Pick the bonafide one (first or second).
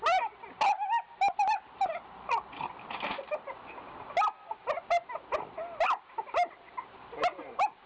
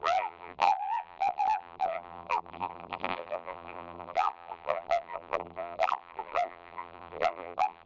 first